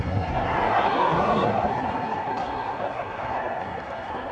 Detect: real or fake fake